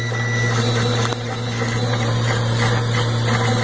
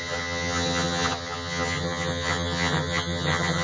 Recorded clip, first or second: first